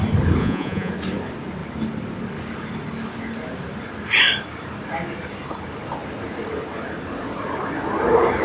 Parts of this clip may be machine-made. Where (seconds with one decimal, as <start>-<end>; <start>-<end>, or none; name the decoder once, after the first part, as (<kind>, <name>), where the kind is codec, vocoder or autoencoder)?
0.4-0.9 (vocoder, Vocos)